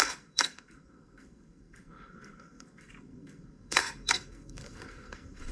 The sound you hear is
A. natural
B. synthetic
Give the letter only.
B